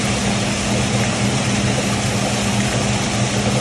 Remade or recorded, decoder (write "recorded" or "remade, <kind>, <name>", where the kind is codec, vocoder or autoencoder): recorded